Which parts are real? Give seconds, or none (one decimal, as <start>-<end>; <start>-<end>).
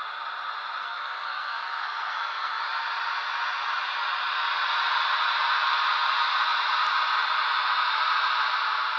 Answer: 0.0-0.8; 2.6-9.0